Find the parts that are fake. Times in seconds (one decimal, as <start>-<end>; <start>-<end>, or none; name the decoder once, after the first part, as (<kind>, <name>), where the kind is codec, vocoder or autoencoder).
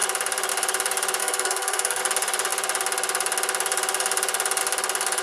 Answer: 1.2-2.0 (codec, SNAC)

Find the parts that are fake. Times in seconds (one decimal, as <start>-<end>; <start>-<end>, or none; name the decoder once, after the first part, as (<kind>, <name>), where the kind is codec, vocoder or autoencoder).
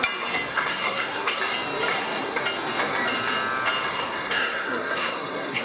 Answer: 0.5-1.4 (codec, SNAC); 1.9-2.4; 3.9-5.6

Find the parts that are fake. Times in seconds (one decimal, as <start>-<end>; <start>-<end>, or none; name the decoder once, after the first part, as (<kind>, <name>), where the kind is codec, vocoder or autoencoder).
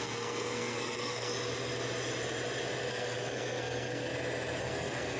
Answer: 0.0-1.3 (codec, SNAC); 2.9-4.1; 4.6-5.2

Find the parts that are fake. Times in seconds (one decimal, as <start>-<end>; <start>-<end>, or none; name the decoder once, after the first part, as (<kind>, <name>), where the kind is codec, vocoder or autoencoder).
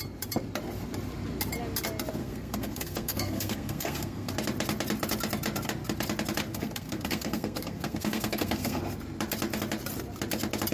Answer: 2.2-4.3 (codec, SNAC); 6.5-8.8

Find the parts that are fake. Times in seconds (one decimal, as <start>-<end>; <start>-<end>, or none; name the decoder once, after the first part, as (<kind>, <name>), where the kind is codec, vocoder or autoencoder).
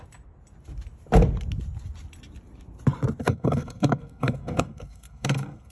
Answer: 3.2-5.7 (codec, SNAC)